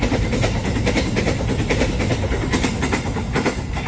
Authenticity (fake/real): real